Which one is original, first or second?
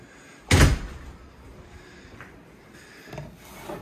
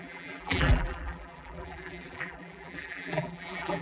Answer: first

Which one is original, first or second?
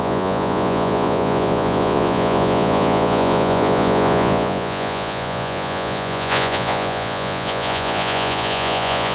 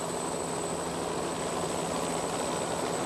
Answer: second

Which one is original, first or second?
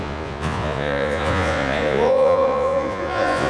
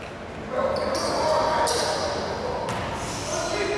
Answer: second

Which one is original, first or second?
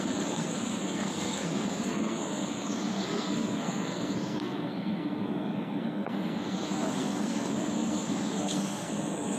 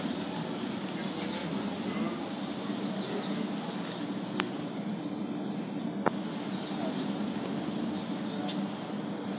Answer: second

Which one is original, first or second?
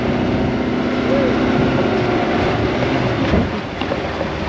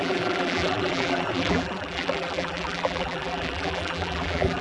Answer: first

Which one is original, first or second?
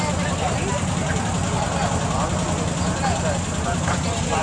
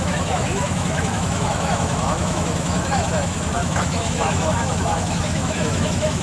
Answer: first